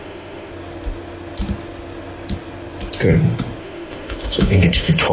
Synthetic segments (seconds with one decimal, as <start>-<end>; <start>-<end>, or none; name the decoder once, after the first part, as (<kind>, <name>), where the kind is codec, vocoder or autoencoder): 0.0-0.5 (autoencoder, DAC-VAE); 3.6-5.1